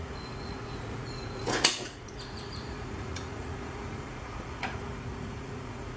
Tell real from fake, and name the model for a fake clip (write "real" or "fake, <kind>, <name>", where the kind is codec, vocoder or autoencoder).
fake, vocoder, Vocos